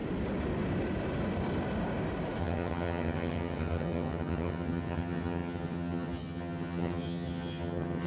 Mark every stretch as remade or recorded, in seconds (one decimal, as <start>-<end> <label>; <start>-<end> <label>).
0.0-2.4 recorded; 2.4-8.1 remade

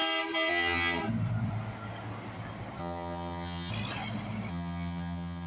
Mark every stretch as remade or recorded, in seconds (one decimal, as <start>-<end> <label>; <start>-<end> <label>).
0.0-0.5 recorded; 0.5-1.0 remade; 1.0-2.8 recorded; 2.8-3.7 remade; 3.7-4.5 recorded; 4.5-5.5 remade

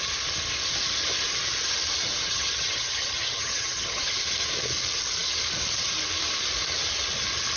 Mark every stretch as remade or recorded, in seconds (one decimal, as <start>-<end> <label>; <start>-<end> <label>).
0.0-2.2 recorded; 2.2-4.1 remade; 4.1-7.6 recorded

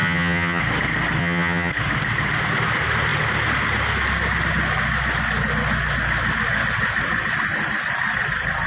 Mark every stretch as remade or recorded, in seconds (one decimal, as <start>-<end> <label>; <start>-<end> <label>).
0.0-0.6 remade; 0.6-1.2 recorded; 1.2-1.7 remade; 1.7-8.7 recorded